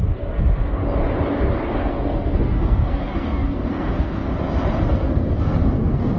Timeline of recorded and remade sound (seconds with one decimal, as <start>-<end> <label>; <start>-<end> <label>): 0.0-0.8 remade; 0.8-1.8 recorded; 1.8-4.3 remade; 4.3-4.9 recorded; 4.9-6.2 remade